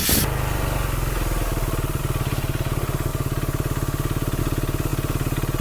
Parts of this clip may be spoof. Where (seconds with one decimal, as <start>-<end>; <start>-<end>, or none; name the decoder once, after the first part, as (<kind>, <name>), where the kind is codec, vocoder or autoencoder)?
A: none